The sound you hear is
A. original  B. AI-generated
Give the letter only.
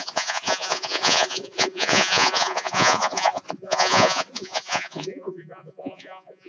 B